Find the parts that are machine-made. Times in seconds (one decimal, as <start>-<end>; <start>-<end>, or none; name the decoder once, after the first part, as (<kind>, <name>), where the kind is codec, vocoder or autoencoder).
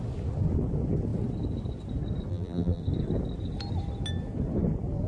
2.3-2.8 (vocoder, BigVGAN v2)